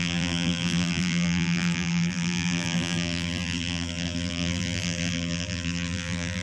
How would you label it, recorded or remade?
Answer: remade